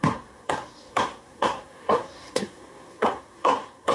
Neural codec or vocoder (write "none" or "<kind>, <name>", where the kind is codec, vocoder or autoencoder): codec, SNAC